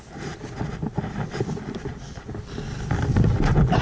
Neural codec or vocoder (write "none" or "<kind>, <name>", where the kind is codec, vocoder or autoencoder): none